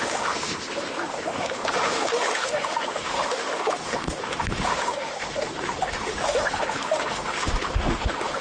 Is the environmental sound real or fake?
fake